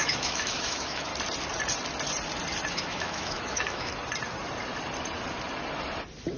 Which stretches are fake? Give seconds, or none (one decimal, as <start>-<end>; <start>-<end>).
0.0-1.1; 2.7-3.9

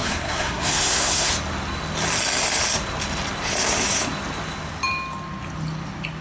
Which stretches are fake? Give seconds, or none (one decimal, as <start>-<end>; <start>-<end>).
0.0-1.3

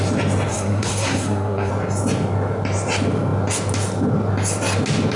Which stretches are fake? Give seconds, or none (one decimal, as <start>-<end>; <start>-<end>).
0.5-1.7

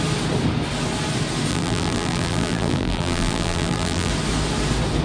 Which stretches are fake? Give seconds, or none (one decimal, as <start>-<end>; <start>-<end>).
1.5-4.1

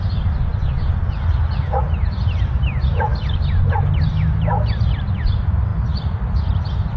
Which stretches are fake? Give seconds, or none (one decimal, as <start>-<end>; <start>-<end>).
none